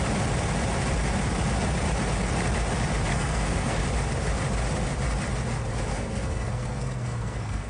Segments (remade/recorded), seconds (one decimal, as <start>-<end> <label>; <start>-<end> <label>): 0.0-3.1 recorded; 3.1-3.8 remade; 3.8-5.9 recorded; 5.9-7.7 remade